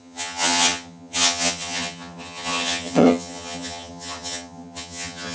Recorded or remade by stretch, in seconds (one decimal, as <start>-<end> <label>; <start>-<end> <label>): 0.0-5.3 remade